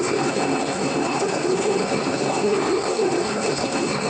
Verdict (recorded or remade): remade